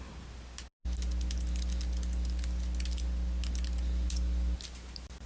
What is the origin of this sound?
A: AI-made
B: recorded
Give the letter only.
B